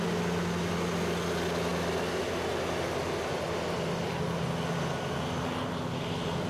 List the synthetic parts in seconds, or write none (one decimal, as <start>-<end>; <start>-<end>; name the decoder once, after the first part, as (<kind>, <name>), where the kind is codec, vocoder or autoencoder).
none